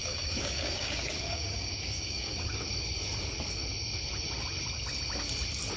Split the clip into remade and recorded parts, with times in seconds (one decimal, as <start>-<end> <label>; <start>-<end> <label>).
0.0-2.6 remade; 2.6-5.8 recorded